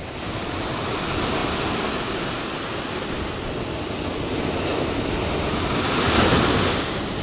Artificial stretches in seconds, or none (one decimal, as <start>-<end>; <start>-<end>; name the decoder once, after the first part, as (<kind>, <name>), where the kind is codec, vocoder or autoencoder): none